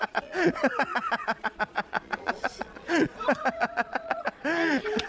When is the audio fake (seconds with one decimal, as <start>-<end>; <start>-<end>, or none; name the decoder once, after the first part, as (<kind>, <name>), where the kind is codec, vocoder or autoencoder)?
0.0-5.1 (vocoder, Vocos)